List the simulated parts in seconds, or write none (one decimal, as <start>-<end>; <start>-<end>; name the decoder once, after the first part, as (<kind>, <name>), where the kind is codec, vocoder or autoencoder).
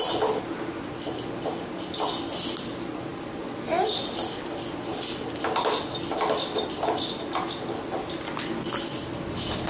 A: none